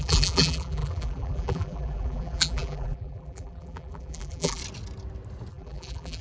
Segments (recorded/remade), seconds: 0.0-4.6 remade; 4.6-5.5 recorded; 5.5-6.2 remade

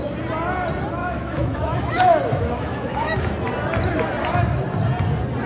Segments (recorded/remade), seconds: 0.0-1.0 recorded; 1.0-3.3 remade; 3.3-5.5 recorded

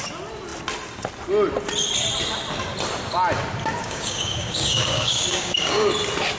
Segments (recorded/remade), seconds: 0.0-3.8 recorded; 3.8-5.9 remade; 5.9-6.4 recorded

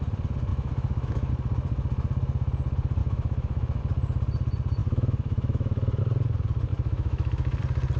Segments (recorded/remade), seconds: 0.0-0.5 recorded; 0.5-1.3 remade; 1.3-3.0 recorded; 3.0-3.8 remade; 3.8-4.8 recorded; 4.8-6.0 remade; 6.0-6.7 recorded; 6.7-7.6 remade; 7.6-8.0 recorded

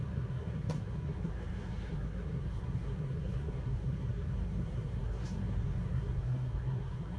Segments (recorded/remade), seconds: 0.0-7.2 remade

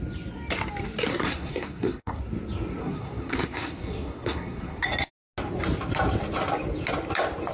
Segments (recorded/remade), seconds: 0.0-1.1 recorded; 1.1-2.2 remade; 2.2-2.8 recorded; 2.8-4.8 remade; 4.8-7.5 recorded

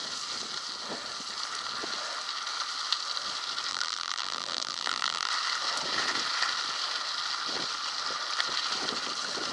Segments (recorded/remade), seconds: 0.0-3.7 recorded; 3.7-5.3 remade; 5.3-9.5 recorded

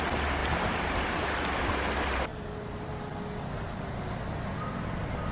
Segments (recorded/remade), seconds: 0.0-0.4 recorded; 0.4-1.1 remade; 1.1-2.3 recorded; 2.3-2.9 remade; 2.9-5.3 recorded